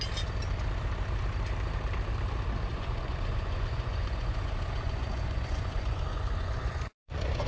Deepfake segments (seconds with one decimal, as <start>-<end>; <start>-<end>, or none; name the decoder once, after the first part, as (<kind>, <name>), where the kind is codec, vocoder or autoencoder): 2.7-7.5 (vocoder, Vocos)